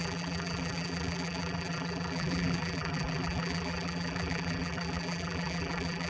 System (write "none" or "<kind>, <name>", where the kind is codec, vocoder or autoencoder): vocoder, BigVGAN v2